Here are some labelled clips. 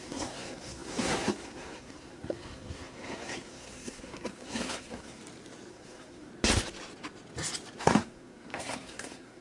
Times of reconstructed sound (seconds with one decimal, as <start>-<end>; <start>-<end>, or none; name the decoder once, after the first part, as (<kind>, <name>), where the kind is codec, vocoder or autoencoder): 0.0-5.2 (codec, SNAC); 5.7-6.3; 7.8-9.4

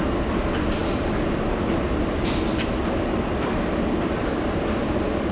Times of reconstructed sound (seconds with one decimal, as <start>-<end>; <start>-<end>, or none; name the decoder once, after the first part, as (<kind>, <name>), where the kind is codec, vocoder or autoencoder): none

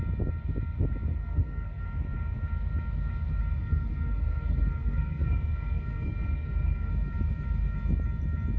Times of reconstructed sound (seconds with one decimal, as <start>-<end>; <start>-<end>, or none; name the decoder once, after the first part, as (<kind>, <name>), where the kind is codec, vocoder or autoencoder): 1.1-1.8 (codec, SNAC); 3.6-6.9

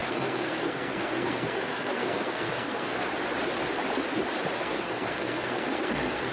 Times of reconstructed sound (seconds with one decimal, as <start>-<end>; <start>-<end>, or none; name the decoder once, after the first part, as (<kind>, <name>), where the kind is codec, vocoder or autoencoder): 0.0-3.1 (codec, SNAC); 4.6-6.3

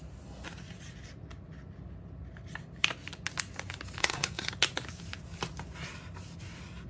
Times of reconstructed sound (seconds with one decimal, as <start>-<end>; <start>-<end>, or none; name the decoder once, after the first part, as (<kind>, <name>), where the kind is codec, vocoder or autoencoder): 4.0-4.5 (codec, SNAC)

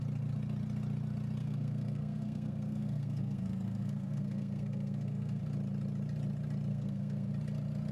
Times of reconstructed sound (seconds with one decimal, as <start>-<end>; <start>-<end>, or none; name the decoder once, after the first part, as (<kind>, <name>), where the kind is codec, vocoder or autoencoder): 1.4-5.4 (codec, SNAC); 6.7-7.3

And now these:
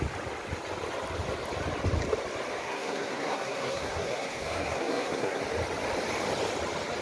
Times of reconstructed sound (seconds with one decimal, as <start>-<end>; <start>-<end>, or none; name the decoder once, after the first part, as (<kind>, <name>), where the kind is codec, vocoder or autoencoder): 2.6-5.4 (codec, SNAC)